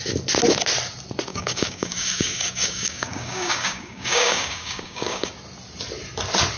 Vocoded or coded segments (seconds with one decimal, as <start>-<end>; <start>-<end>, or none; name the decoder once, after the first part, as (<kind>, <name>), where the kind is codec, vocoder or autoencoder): 1.3-5.3 (codec, DAC)